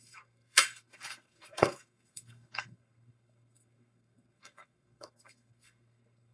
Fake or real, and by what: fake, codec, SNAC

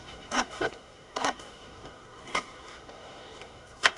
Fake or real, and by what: fake, codec, SNAC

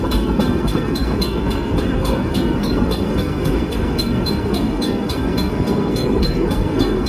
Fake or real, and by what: fake, codec, SNAC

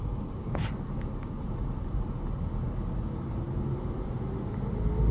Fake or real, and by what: real